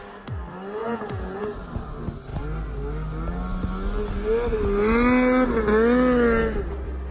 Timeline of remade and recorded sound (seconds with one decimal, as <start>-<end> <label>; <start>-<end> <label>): 0.0-0.8 recorded; 0.8-1.4 remade; 1.4-7.1 recorded